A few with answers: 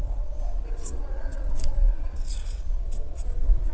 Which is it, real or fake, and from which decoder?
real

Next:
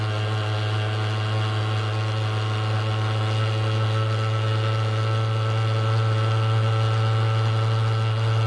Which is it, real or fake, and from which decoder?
real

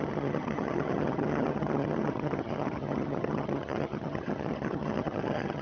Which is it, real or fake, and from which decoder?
fake, vocoder, HiFi-GAN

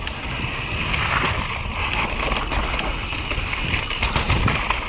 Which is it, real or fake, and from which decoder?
real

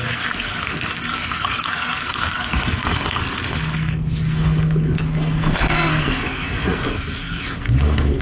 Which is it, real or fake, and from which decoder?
fake, codec, SNAC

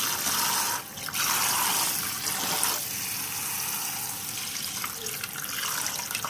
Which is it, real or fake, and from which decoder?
real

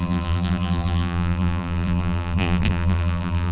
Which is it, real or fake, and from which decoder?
fake, vocoder, BigVGAN v2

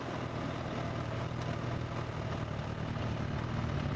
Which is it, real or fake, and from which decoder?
real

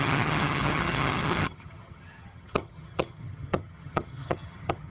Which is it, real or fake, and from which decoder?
fake, vocoder, HiFi-GAN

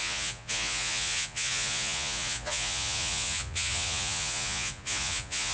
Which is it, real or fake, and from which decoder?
fake, vocoder, Vocos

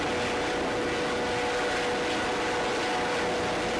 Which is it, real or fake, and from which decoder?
real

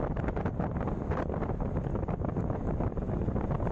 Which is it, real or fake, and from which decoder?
real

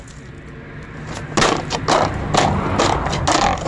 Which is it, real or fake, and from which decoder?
real